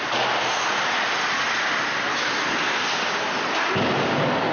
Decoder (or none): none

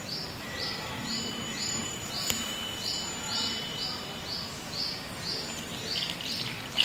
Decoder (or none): none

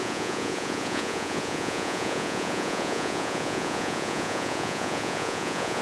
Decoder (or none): vocoder, Vocos